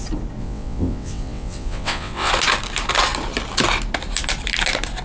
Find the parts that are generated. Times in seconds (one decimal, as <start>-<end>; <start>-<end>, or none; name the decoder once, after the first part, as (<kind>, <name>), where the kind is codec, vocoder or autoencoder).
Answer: 0.4-2.3 (vocoder, WaveNeXt)